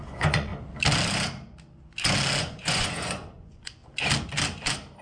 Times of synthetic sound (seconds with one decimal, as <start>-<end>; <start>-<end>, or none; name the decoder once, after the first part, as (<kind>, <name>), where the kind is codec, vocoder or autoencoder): 0.0-0.5 (vocoder, Vocos); 2.4-3.8